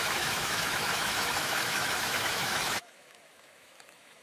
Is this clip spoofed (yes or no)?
yes